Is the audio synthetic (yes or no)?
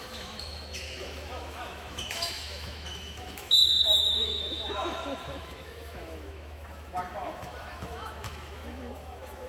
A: yes